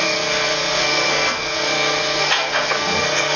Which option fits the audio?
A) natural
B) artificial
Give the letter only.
B